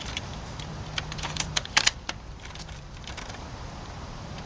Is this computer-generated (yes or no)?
yes